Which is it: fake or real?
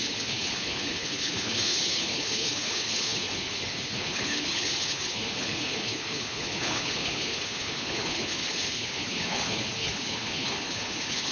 fake